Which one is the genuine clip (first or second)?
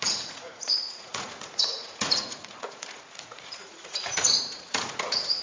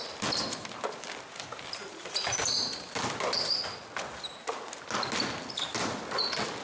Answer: second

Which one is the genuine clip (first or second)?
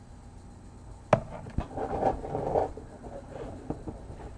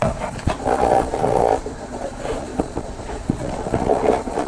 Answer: first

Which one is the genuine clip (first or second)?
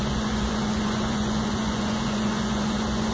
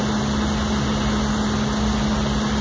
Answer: second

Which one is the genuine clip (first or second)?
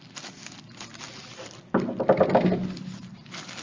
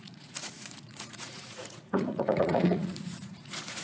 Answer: first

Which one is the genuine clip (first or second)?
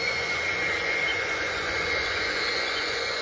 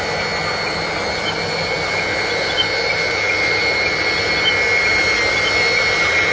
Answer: second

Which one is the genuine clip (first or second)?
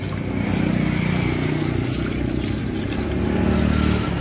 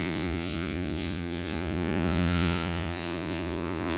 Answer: first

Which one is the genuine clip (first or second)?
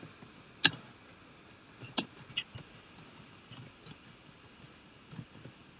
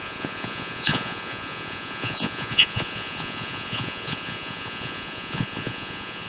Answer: first